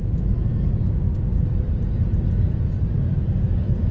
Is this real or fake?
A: real